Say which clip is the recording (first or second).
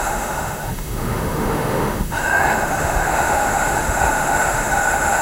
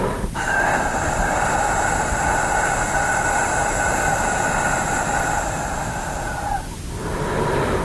second